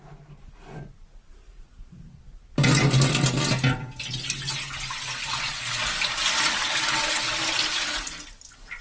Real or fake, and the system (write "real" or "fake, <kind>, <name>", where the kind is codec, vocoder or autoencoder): real